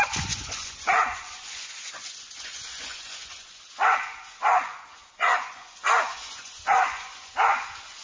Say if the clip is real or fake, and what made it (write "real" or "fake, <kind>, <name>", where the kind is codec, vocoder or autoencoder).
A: fake, vocoder, Vocos